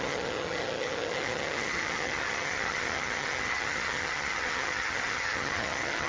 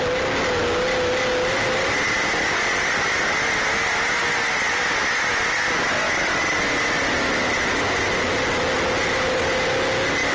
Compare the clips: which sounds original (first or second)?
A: second